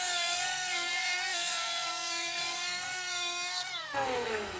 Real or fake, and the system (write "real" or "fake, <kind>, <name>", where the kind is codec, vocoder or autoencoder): fake, codec, SNAC